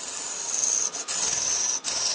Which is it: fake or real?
real